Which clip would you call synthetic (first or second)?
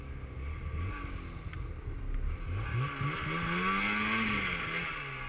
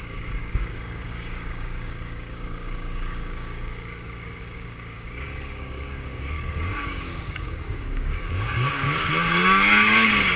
second